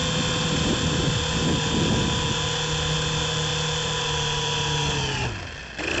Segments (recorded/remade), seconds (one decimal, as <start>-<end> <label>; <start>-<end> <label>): 0.0-6.0 recorded